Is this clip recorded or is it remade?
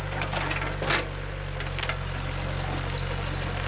recorded